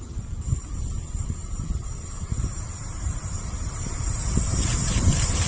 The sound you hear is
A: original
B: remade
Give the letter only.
B